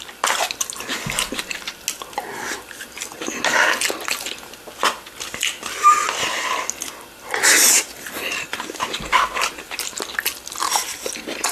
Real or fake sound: real